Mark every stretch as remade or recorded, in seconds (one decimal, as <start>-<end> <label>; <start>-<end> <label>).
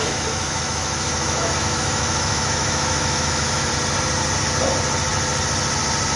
0.0-3.7 remade; 3.7-6.2 recorded